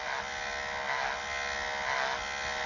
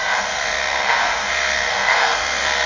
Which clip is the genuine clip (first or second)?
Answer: first